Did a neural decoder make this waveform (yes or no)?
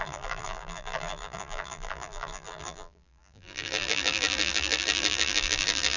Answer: yes